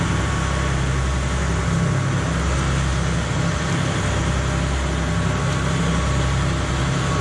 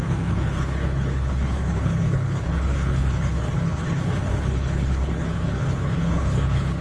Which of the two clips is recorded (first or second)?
first